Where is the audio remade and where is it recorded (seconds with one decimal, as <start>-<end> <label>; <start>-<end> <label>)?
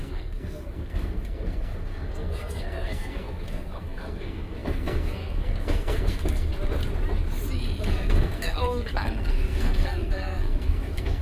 0.0-6.5 remade; 6.5-7.8 recorded; 7.8-11.2 remade